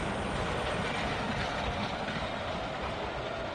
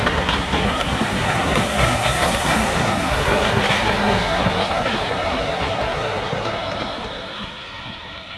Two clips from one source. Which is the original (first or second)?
first